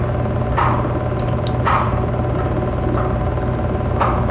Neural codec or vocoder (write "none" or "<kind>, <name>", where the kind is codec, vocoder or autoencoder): none